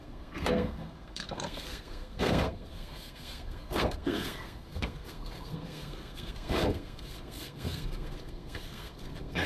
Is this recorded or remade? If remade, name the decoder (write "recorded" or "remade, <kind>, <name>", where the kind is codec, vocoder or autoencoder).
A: remade, codec, SNAC